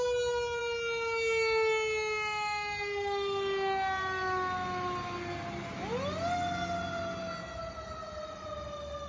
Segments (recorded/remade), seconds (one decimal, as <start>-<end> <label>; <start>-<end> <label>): 0.0-9.1 recorded